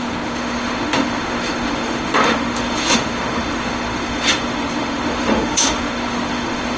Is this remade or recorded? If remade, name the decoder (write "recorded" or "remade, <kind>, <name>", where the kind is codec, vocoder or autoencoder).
remade, autoencoder, DAC-VAE